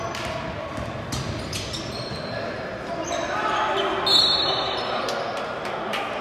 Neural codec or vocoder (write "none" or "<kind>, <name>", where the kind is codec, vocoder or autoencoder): none